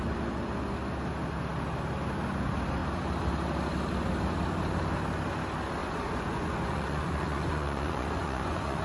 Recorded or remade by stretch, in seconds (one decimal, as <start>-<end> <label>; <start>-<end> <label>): 0.0-5.8 recorded; 5.8-8.8 remade